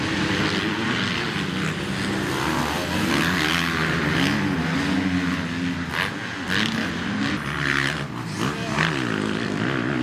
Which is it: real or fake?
real